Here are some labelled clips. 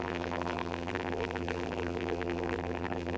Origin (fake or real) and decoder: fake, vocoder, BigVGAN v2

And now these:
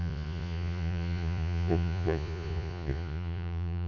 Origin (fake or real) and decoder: fake, vocoder, Vocos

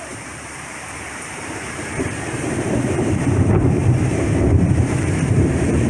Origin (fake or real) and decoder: fake, vocoder, BigVGAN v2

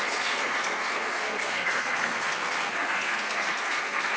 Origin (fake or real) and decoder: fake, codec, SNAC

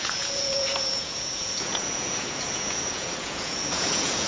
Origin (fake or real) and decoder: fake, vocoder, Vocos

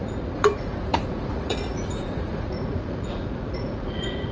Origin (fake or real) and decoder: fake, vocoder, Vocos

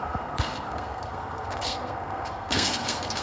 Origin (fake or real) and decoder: fake, codec, SNAC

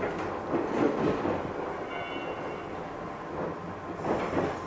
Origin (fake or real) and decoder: real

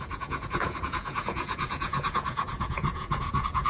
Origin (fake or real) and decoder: fake, vocoder, Vocos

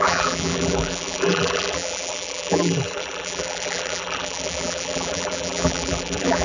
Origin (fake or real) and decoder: fake, vocoder, BigVGAN v2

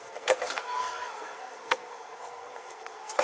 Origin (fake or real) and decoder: fake, codec, SNAC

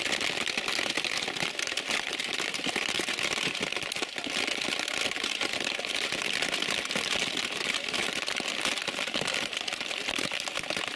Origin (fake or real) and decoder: real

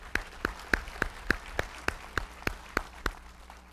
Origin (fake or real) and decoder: real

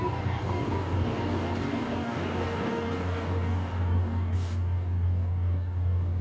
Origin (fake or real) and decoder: fake, codec, DAC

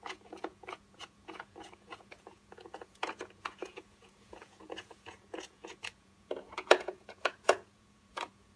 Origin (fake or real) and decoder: fake, vocoder, Vocos